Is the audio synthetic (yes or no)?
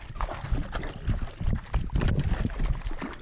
no